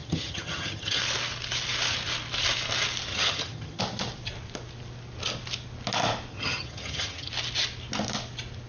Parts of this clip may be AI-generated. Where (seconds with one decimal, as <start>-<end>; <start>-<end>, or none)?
0.0-1.0; 3.1-3.8; 6.3-7.3